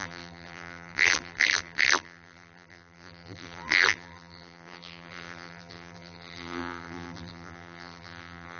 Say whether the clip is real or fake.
fake